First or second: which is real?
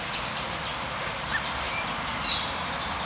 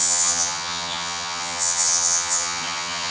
first